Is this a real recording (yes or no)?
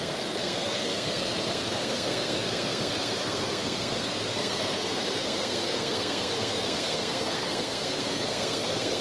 no